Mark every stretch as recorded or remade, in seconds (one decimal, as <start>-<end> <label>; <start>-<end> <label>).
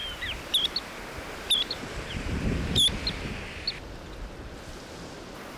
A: 0.0-5.6 recorded